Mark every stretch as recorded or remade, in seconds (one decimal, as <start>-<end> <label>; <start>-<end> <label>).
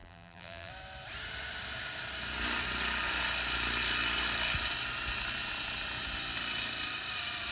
0.0-0.7 remade; 0.7-7.5 recorded